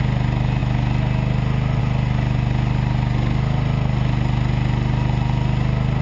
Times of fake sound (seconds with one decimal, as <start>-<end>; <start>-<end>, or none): none

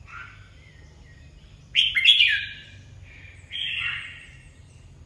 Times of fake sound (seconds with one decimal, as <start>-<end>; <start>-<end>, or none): none

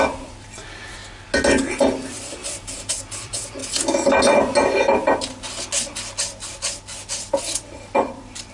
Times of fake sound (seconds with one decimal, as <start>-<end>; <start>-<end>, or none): 0.0-1.0; 1.7-3.6; 7.4-8.5

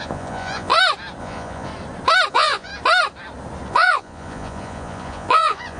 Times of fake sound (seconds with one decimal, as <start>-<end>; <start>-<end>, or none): 0.0-0.7; 1.2-1.7; 2.3-2.7; 3.7-5.8